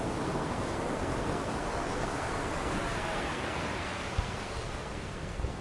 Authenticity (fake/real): fake